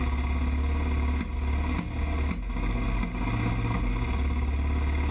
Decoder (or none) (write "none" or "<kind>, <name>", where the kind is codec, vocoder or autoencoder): none